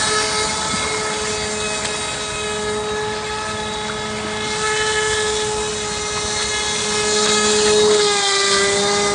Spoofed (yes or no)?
no